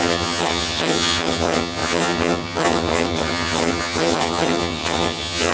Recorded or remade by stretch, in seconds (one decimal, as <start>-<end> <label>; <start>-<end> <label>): 0.0-5.5 remade